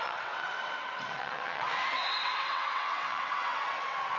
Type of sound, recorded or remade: remade